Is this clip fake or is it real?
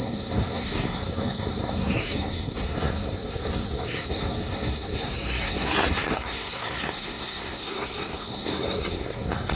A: fake